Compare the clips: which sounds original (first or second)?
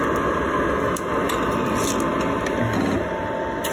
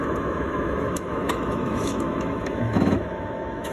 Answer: first